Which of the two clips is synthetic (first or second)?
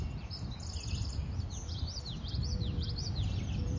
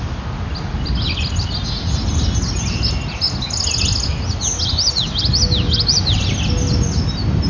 first